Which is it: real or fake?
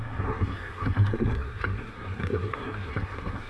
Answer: fake